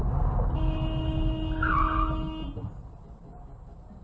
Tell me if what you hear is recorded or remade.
recorded